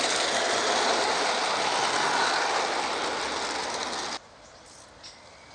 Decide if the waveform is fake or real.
real